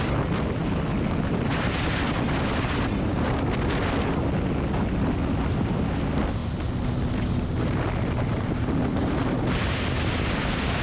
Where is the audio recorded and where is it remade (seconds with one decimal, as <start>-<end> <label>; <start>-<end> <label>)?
0.0-10.8 recorded